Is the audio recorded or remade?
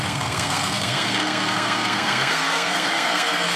remade